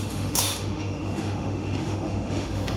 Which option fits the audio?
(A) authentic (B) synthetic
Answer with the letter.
B